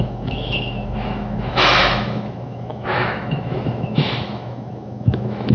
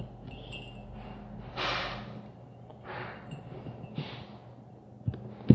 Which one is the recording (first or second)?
second